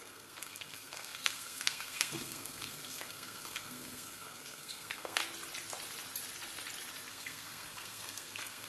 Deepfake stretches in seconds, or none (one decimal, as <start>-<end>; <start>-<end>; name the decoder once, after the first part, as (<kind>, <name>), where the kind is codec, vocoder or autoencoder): 0.0-5.2 (codec, SNAC); 7.1-8.7